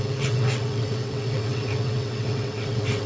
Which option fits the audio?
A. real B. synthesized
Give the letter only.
B